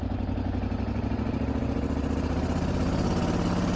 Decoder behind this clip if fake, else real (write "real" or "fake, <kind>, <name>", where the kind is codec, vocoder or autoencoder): real